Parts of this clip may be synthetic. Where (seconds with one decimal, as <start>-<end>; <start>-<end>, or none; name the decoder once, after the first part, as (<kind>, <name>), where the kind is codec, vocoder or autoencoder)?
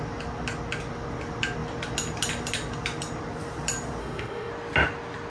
4.0-4.5 (autoencoder, DAC-VAE)